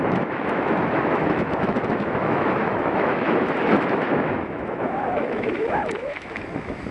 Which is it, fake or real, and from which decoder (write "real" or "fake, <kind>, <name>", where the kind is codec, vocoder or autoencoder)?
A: fake, autoencoder, DAC-VAE